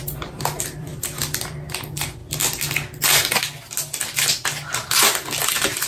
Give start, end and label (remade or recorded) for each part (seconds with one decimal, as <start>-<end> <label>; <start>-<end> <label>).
0.0-2.2 remade; 2.2-5.5 recorded; 5.5-5.9 remade